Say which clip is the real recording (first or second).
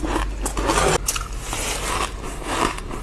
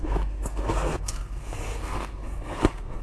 first